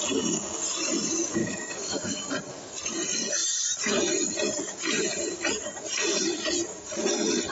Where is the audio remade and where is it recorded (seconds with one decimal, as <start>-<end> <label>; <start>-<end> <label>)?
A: 0.0-1.4 recorded; 1.4-2.3 remade; 2.3-7.5 recorded